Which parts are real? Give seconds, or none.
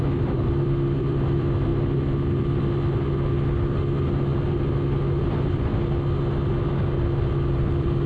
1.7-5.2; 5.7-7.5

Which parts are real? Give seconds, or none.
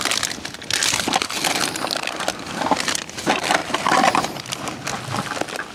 0.0-5.7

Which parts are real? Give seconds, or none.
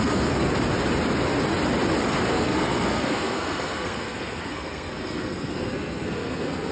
0.5-2.3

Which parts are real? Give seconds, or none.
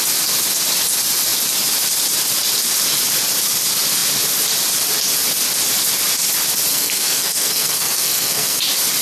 0.0-6.7; 8.6-9.0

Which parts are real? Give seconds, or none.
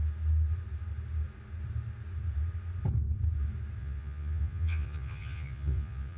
0.0-3.8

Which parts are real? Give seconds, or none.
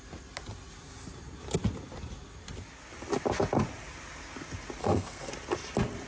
0.0-4.8; 5.3-6.1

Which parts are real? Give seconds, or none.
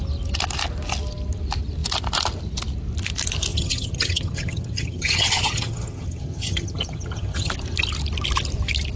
0.0-3.5; 7.5-9.0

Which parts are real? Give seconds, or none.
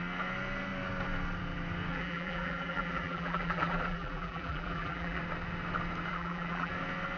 0.0-1.9; 5.2-6.1; 6.7-7.2